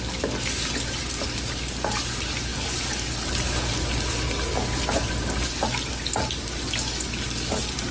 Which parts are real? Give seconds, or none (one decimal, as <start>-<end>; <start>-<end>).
0.0-7.9